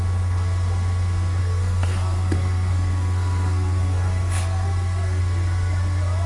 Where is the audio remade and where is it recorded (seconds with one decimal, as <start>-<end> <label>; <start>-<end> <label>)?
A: 0.0-1.4 recorded; 1.4-5.2 remade; 5.2-6.3 recorded